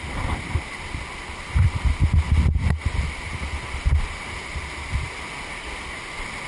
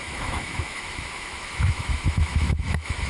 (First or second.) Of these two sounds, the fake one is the second